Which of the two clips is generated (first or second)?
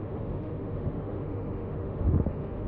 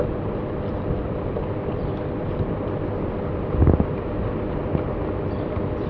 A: first